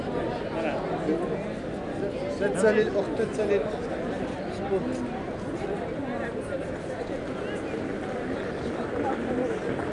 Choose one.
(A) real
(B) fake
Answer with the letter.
A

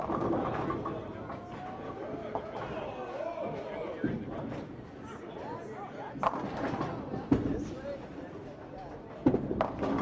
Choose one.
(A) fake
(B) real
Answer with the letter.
B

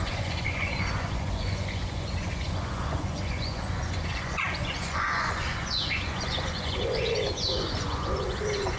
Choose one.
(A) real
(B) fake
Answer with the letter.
B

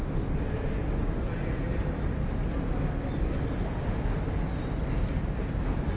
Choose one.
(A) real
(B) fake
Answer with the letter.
A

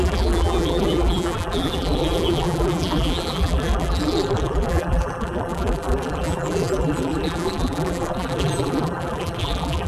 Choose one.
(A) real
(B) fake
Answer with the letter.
B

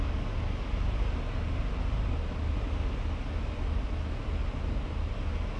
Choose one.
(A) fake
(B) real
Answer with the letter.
B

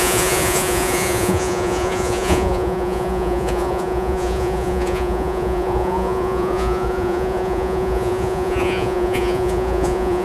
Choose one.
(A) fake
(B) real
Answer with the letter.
A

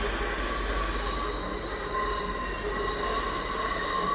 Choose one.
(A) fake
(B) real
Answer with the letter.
B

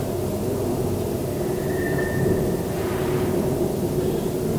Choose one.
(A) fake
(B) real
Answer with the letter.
B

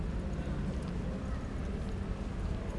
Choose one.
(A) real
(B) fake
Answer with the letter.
A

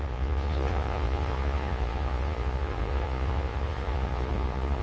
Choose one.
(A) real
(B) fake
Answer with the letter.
B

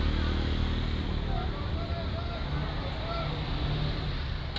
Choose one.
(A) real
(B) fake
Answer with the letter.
A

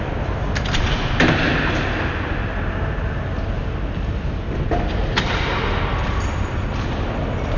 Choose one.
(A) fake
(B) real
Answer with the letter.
B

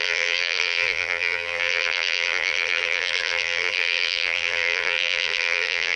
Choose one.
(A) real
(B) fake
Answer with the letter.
B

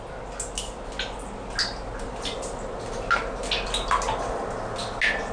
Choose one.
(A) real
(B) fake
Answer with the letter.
A